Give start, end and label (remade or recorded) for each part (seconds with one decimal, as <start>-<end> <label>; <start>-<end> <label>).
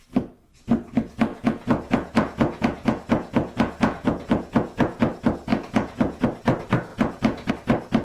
0.0-1.3 recorded; 1.3-5.0 remade; 5.0-5.5 recorded; 5.5-6.2 remade; 6.2-6.9 recorded; 6.9-7.5 remade; 7.5-8.0 recorded